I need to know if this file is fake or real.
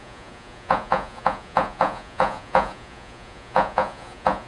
fake